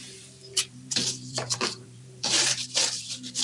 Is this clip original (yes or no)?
no